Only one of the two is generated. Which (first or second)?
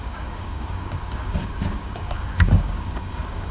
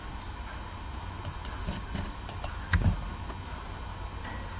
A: first